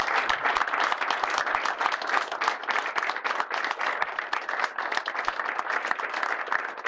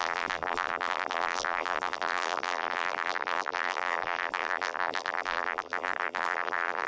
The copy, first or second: second